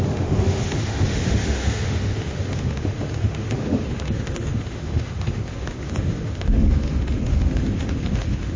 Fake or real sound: fake